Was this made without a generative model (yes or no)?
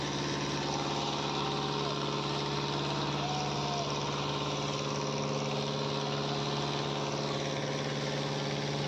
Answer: yes